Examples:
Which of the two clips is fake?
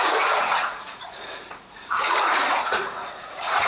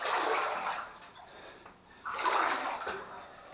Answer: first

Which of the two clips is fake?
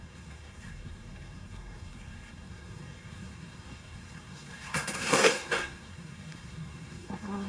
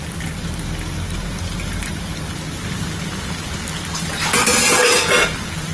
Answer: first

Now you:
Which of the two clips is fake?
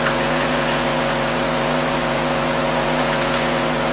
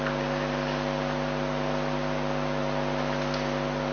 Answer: first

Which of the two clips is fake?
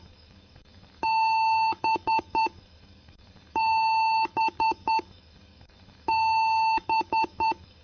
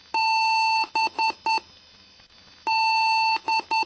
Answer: first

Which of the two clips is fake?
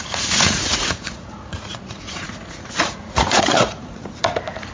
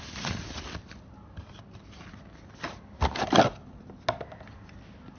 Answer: first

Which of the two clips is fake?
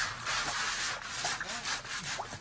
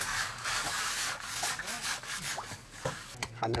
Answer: second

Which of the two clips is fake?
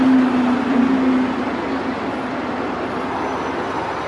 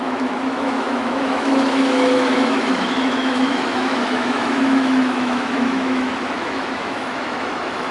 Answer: second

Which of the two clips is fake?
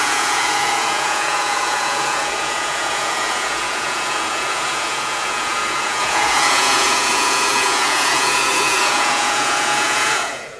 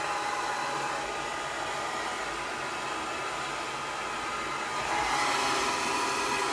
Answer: first